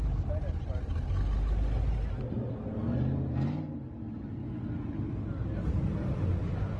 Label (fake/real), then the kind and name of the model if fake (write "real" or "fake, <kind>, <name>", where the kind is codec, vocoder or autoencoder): real